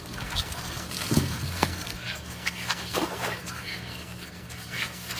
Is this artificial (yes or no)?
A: yes